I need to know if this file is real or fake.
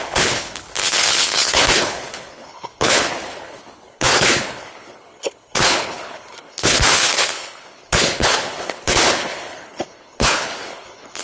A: fake